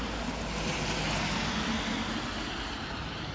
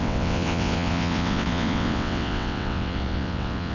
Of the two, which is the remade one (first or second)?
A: second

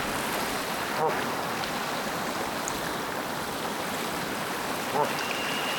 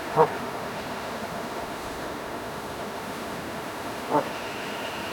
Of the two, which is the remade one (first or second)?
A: second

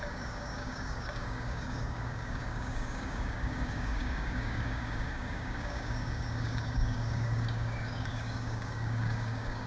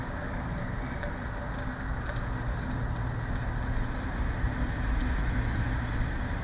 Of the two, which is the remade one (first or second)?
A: first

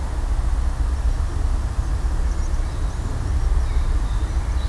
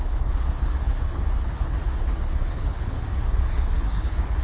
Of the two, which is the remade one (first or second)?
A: second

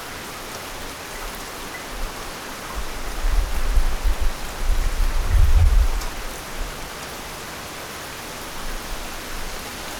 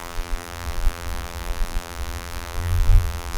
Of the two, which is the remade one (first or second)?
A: second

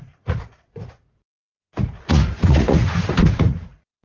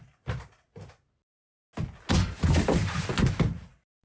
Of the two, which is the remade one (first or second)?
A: first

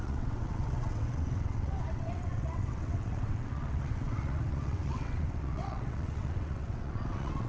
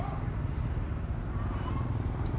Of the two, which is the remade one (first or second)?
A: first